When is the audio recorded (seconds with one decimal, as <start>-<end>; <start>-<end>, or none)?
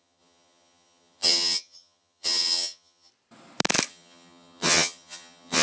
3.1-3.9